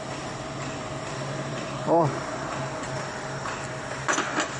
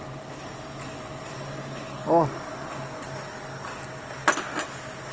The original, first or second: second